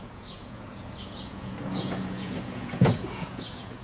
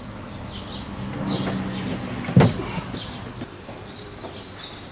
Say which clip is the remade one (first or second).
first